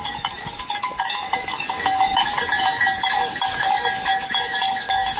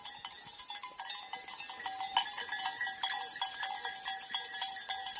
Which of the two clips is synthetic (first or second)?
first